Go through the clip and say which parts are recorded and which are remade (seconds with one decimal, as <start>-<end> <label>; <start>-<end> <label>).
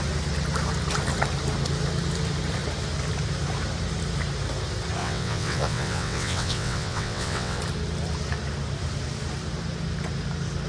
0.0-5.0 recorded; 5.0-7.6 remade; 7.6-10.7 recorded